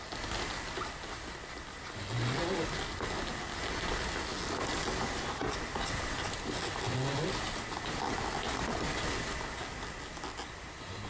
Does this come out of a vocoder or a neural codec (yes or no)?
no